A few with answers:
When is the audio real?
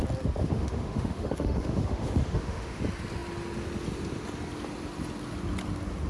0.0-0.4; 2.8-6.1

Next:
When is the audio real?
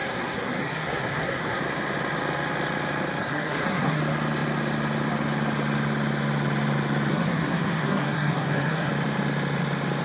1.6-3.2; 4.0-7.1; 8.9-10.0